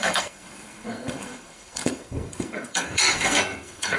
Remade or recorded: remade